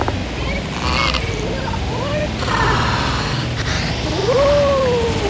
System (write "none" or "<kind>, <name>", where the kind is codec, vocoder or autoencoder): none